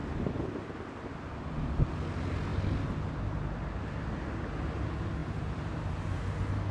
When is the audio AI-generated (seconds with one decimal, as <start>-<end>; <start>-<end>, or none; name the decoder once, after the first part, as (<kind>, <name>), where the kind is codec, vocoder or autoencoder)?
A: 2.5-3.1 (vocoder, BigVGAN v2); 5.2-5.8

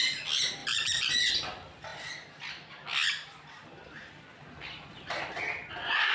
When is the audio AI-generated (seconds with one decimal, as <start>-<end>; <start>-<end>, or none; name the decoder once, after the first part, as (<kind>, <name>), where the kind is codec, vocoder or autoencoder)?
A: 0.6-1.3 (vocoder, BigVGAN v2)

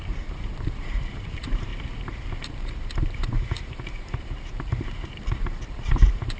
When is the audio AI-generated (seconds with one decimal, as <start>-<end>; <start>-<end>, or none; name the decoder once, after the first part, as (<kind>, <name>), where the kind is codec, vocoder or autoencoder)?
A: 0.0-6.4 (vocoder, BigVGAN v2)

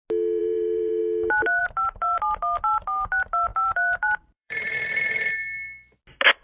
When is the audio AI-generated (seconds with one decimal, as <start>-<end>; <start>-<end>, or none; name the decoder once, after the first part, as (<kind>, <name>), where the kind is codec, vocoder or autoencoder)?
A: 0.4-1.0 (vocoder, BigVGAN v2); 1.6-2.2; 3.5-5.3

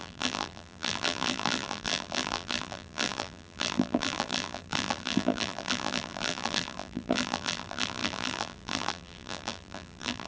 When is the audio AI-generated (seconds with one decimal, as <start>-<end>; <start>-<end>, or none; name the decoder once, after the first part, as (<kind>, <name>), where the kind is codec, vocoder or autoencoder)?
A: 0.0-10.3 (vocoder, BigVGAN v2)

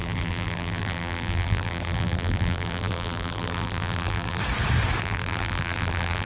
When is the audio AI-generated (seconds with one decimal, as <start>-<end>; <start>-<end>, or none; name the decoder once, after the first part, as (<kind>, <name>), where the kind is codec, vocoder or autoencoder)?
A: 0.0-4.4 (vocoder, BigVGAN v2); 5.0-6.2

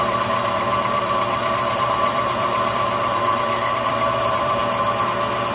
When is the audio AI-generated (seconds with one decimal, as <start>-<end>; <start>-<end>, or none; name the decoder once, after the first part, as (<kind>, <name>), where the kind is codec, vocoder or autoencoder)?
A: 0.0-4.6 (vocoder, BigVGAN v2)